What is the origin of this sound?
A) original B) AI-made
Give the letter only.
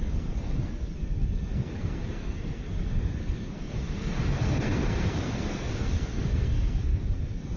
B